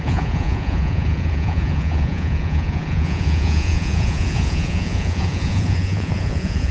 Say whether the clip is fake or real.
fake